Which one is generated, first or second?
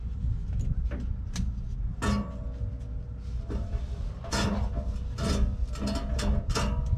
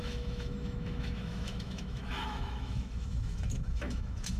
second